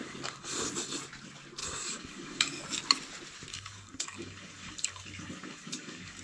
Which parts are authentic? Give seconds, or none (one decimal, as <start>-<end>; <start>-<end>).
0.7-1.6; 2.6-3.5